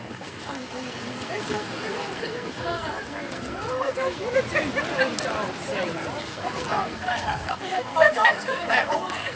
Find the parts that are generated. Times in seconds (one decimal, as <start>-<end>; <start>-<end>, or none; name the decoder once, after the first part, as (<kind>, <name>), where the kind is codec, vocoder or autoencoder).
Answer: 0.0-4.2 (codec, SNAC); 6.2-9.4